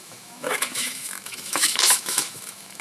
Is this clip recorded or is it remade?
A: remade